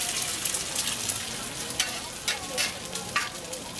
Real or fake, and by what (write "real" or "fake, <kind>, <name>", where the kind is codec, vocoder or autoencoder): real